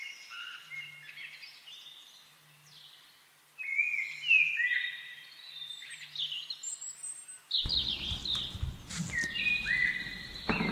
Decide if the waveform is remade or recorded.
recorded